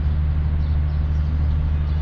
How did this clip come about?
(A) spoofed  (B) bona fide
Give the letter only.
B